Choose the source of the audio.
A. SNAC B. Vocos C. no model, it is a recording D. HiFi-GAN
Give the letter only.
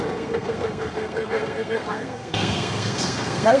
A